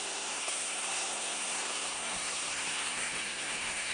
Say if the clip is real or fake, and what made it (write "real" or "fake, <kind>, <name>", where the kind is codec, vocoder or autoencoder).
fake, codec, SNAC